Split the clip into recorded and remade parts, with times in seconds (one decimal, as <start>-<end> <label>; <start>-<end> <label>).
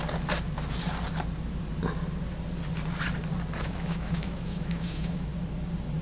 0.0-3.6 recorded; 3.6-5.3 remade; 5.3-6.0 recorded